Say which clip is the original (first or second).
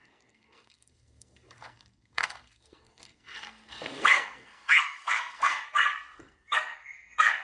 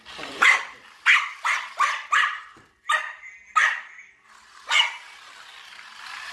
second